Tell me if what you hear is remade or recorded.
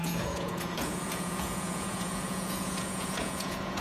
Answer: remade